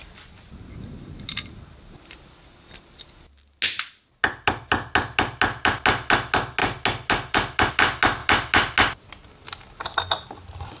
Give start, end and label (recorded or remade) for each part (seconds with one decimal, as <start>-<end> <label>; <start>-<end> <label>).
0.0-10.8 recorded